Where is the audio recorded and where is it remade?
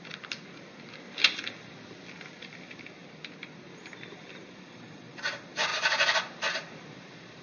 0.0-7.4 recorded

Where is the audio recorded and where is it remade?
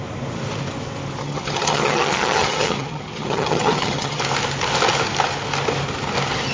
0.0-1.2 recorded; 1.2-4.2 remade; 4.2-6.5 recorded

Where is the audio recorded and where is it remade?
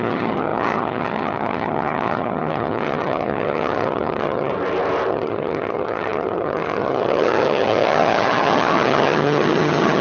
0.0-4.5 remade; 4.5-5.1 recorded; 5.1-10.0 remade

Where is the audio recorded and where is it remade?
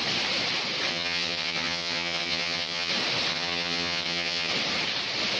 0.0-0.9 recorded; 0.9-2.9 remade; 2.9-3.3 recorded; 3.3-4.5 remade; 4.5-5.4 recorded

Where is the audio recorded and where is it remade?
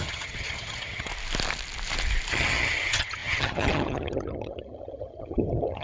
0.0-1.1 remade; 1.1-2.3 recorded; 2.3-5.8 remade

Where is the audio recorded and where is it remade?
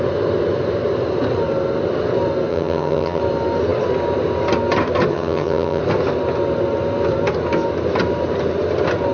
0.0-2.5 recorded; 2.5-3.2 remade; 3.2-5.1 recorded; 5.1-5.8 remade; 5.8-9.1 recorded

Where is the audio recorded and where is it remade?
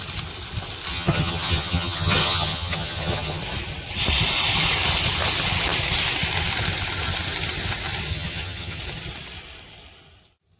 0.0-0.9 recorded; 0.9-3.4 remade; 3.4-8.1 recorded; 8.1-8.8 remade; 8.8-10.6 recorded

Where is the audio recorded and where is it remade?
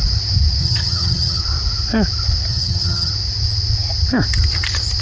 0.0-0.6 recorded; 0.6-1.4 remade; 1.4-2.5 recorded; 2.5-3.1 remade; 3.1-5.0 recorded